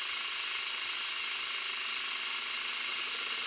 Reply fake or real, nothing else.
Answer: real